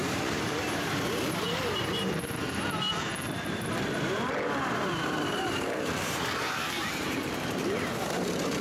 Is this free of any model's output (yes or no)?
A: no